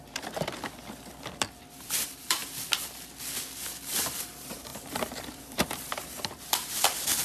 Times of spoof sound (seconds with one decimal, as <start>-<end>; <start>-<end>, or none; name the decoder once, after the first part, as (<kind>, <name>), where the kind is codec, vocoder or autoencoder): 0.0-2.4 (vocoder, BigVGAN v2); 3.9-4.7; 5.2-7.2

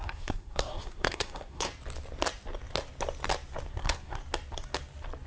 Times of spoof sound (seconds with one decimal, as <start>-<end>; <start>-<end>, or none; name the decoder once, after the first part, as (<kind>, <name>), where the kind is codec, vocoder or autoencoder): 0.0-1.7 (codec, SNAC); 3.7-4.2

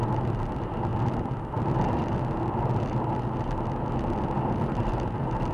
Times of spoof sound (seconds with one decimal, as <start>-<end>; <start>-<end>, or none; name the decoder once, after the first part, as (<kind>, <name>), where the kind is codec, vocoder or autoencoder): none

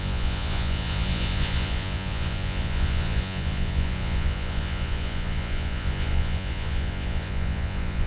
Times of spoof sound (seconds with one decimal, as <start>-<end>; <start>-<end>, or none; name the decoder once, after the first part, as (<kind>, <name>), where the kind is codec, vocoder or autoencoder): 0.0-8.1 (vocoder, Vocos)

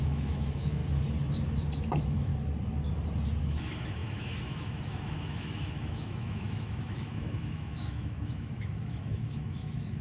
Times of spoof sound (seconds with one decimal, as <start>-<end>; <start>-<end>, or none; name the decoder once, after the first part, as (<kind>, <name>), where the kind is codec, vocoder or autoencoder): 0.0-0.8 (autoencoder, DAC-VAE); 1.9-2.3; 3.4-10.0

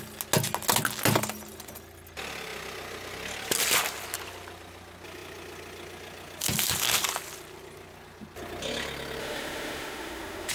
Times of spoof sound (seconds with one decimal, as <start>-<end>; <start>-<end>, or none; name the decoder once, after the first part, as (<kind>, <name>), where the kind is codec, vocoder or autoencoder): 9.2-10.5 (autoencoder, DAC-VAE)